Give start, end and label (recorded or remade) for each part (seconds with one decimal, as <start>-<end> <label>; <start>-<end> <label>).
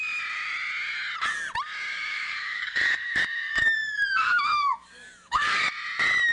0.0-1.9 recorded; 1.9-5.7 remade; 5.7-6.3 recorded